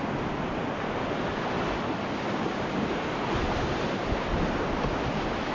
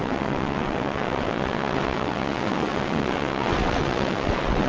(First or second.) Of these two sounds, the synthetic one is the second